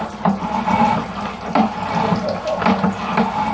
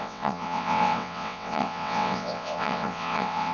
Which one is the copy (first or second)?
second